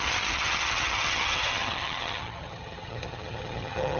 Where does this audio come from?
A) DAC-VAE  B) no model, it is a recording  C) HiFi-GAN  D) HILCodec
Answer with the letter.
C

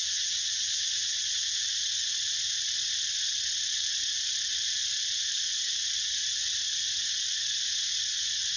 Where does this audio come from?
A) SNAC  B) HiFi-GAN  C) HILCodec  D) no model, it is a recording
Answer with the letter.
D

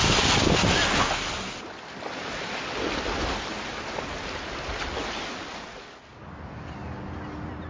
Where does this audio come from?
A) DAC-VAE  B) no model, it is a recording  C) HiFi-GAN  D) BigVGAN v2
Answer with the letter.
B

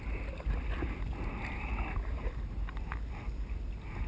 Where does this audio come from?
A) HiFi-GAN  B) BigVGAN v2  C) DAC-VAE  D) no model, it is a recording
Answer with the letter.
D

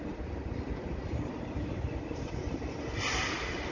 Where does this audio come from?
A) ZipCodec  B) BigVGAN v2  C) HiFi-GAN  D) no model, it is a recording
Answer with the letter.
D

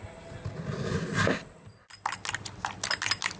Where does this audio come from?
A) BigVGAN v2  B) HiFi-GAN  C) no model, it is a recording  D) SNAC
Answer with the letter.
C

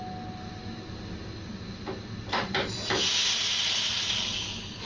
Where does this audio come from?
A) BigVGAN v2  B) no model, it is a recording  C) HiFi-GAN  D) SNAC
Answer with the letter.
B